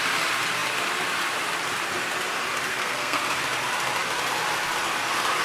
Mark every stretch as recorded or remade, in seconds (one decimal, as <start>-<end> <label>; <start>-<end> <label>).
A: 0.0-2.7 recorded; 2.7-3.2 remade; 3.2-5.4 recorded